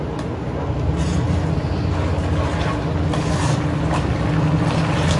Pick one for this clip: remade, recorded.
recorded